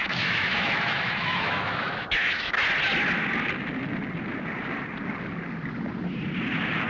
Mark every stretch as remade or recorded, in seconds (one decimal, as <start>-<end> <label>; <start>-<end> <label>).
0.0-2.6 remade; 2.6-6.9 recorded